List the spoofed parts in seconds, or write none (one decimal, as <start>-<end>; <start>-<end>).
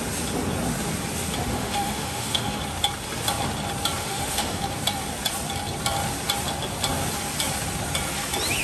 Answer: 1.5-2.6; 4.0-4.6